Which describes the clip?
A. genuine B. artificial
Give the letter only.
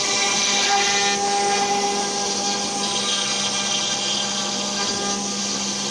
A